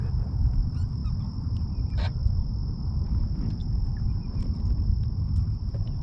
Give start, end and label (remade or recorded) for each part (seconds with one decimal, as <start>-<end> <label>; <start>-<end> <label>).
0.0-1.0 remade; 1.0-1.6 recorded; 1.6-2.2 remade; 2.2-2.7 recorded; 2.7-3.6 remade; 3.6-4.2 recorded; 4.2-6.0 remade